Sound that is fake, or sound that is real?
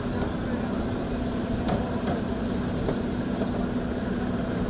real